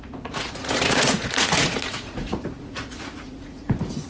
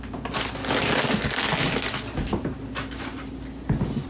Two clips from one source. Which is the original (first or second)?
second